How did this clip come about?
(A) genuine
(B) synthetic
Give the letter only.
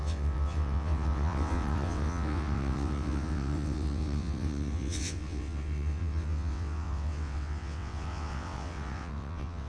B